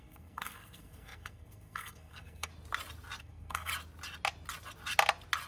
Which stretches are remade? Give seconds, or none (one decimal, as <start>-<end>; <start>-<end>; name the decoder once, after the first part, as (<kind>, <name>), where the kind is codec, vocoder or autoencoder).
0.0-2.5 (codec, SNAC); 3.2-3.7